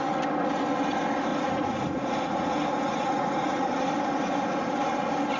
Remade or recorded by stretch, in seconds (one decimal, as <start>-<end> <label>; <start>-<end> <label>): 0.0-1.3 recorded; 1.3-2.5 remade; 2.5-2.9 recorded; 2.9-3.7 remade; 3.7-5.4 recorded